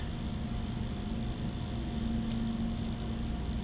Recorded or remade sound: recorded